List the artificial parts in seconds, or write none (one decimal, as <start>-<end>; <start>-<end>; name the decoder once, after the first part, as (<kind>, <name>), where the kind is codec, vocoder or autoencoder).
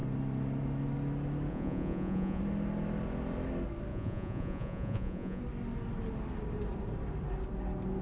1.5-2.4 (vocoder, Vocos); 3.9-5.4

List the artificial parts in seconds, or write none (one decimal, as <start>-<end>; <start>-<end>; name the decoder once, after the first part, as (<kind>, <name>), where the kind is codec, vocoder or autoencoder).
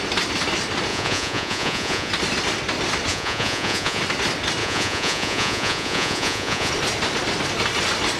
0.9-2.1 (vocoder, Vocos); 3.1-4.0; 4.6-6.7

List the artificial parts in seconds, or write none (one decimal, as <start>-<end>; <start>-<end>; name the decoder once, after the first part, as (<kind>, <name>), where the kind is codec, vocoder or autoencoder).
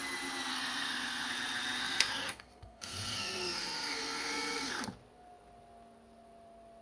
0.5-1.3 (codec, SNAC); 1.8-4.8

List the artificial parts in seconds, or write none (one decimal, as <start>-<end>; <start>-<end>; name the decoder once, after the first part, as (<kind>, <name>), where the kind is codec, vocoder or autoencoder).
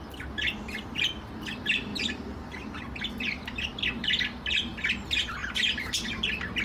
none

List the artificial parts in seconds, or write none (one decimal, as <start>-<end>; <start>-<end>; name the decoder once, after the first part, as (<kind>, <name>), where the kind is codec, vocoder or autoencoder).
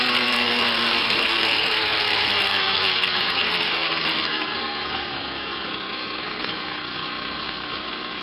0.0-8.2 (codec, SNAC)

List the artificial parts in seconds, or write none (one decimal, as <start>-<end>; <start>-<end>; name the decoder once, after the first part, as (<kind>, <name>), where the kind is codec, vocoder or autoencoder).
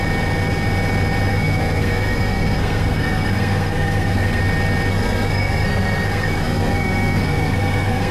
1.3-4.4 (codec, SNAC); 4.9-8.1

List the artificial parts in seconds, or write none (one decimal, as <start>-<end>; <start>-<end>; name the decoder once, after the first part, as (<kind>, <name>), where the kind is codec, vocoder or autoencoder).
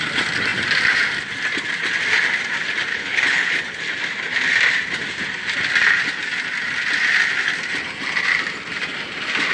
2.9-3.8 (codec, HILCodec)